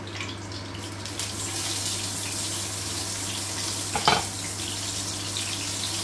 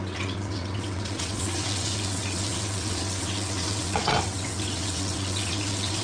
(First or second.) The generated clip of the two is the second